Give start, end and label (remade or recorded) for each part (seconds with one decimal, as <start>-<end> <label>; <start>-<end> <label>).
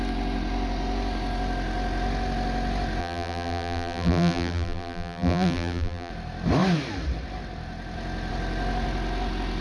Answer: 0.0-3.0 recorded; 3.0-6.1 remade; 6.1-9.6 recorded